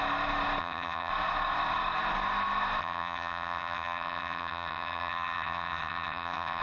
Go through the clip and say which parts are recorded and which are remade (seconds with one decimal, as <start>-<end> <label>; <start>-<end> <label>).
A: 0.0-0.6 recorded; 0.6-1.1 remade; 1.1-2.8 recorded; 2.8-6.6 remade